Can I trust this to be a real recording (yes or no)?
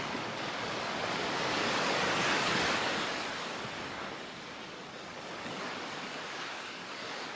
no